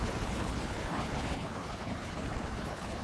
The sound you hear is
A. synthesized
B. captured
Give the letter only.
A